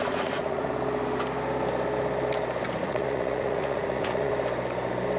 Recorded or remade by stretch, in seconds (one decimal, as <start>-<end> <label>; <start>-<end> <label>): 0.0-0.7 remade; 0.7-2.8 recorded; 2.8-4.3 remade; 4.3-5.2 recorded